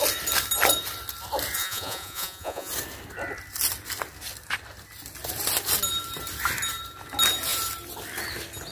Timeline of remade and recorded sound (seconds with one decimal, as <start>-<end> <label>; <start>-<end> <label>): 0.0-1.6 recorded; 1.6-2.7 remade; 2.7-8.7 recorded